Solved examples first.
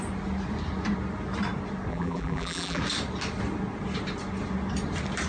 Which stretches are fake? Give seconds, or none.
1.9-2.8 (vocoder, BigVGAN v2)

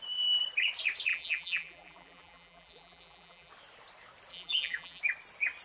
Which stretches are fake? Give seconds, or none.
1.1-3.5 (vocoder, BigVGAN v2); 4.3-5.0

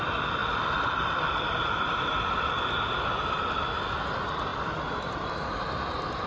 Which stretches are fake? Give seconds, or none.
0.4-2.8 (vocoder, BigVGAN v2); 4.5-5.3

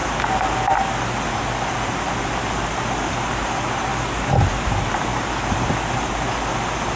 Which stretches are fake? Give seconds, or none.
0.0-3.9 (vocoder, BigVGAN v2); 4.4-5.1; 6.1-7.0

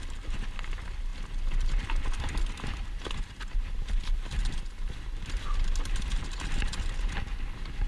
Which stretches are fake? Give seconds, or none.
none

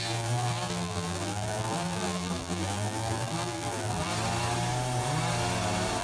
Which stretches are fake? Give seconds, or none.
0.0-4.1 (vocoder, BigVGAN v2)